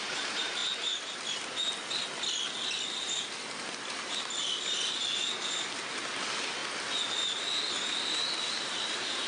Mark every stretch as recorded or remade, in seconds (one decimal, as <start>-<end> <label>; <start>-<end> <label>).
0.0-9.3 recorded